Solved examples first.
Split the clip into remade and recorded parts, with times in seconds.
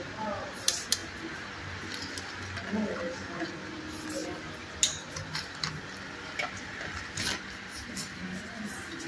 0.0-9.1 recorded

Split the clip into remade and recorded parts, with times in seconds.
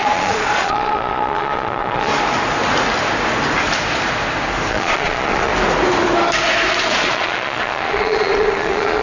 0.0-2.1 remade; 2.1-4.7 recorded; 4.7-5.5 remade; 5.5-6.8 recorded; 6.8-9.0 remade